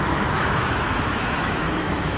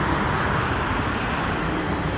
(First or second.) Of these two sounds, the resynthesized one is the first